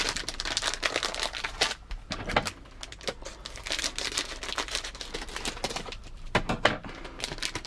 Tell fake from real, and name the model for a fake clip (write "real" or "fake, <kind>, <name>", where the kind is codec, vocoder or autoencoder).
real